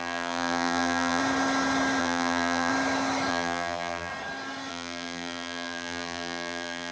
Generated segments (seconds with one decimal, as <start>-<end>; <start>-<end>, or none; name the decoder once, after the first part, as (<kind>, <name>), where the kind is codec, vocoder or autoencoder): 0.0-1.2 (vocoder, BigVGAN v2); 2.0-2.7; 3.3-4.1; 4.7-6.9